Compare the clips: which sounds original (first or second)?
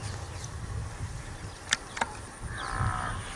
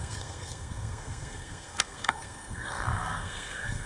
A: first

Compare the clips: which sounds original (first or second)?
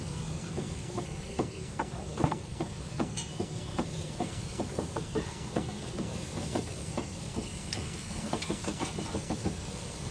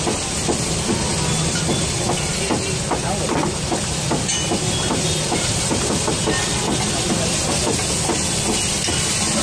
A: second